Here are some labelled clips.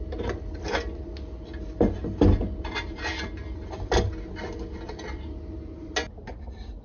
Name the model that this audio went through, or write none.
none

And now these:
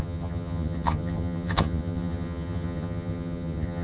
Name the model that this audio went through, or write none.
vocoder, HiFi-GAN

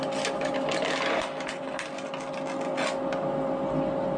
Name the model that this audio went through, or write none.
none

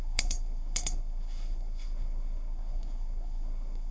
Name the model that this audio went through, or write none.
codec, SNAC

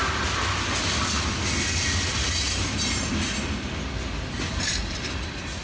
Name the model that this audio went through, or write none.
none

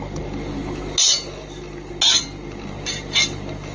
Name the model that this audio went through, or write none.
none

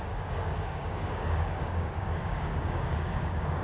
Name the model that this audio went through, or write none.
codec, DAC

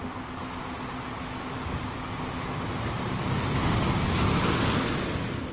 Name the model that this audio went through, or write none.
none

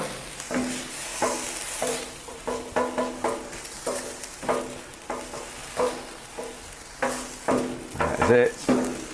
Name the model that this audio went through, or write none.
none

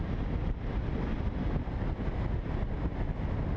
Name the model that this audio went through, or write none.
none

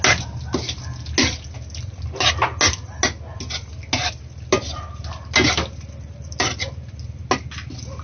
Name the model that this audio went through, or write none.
none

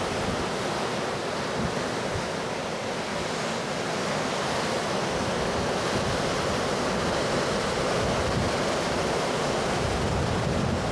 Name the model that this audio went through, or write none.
none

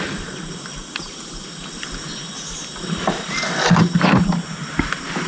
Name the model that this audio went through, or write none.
none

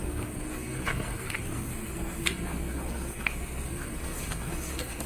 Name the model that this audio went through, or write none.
codec, SNAC